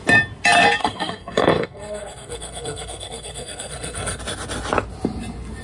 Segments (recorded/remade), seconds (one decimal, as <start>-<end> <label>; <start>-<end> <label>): 0.0-0.8 recorded; 0.8-4.2 remade; 4.2-5.6 recorded